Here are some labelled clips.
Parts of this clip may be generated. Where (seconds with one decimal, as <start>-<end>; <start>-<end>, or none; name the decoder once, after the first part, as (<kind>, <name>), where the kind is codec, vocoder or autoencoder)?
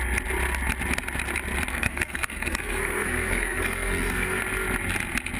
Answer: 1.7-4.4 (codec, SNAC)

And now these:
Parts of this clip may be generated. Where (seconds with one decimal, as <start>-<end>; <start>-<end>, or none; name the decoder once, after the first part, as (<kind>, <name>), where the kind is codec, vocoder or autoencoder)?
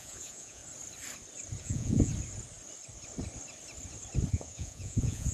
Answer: 0.0-0.6 (vocoder, Vocos); 1.6-2.1; 4.3-5.3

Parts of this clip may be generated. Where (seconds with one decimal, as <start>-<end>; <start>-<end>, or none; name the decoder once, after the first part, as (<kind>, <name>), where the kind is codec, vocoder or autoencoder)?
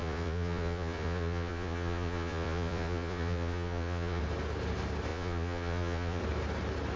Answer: 0.0-4.2 (vocoder, Vocos); 5.1-6.2